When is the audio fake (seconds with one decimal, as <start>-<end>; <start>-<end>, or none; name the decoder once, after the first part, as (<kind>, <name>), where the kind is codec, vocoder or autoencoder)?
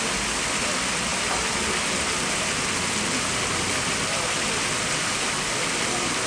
none